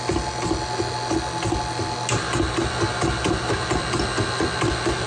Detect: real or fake real